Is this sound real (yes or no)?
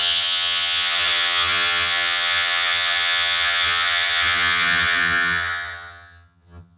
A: no